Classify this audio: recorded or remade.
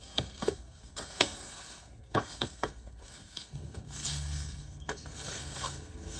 remade